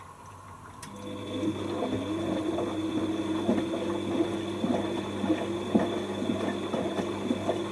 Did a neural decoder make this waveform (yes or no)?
no